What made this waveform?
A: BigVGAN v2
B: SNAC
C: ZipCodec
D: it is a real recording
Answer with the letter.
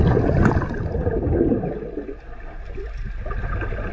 D